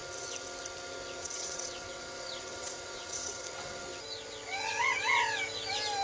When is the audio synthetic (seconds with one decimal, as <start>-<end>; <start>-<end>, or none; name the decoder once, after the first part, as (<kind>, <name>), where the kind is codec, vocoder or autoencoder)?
1.2-3.8 (vocoder, WaveNeXt)